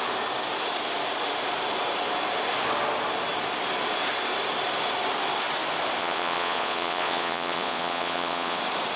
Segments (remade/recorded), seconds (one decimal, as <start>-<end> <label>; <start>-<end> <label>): 0.0-6.0 recorded; 6.0-8.6 remade; 8.6-9.0 recorded